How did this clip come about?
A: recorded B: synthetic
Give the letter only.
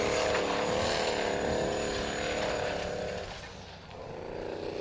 A